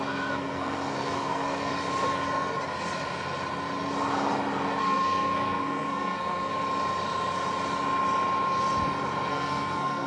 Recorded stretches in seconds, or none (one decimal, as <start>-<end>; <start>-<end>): 1.7-4.8; 6.5-9.3